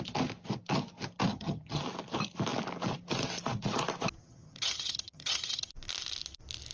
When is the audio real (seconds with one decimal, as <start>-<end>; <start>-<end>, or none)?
0.0-1.3; 1.8-4.2; 5.7-6.7